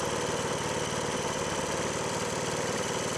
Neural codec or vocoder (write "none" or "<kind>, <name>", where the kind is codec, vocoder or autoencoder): none